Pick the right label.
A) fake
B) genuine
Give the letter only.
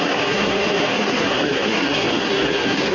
A